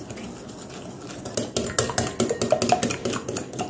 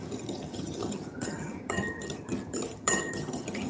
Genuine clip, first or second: first